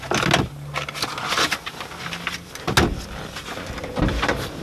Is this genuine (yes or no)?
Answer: yes